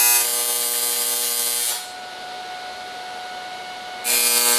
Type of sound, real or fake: real